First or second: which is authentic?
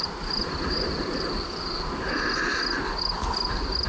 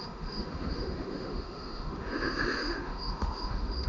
first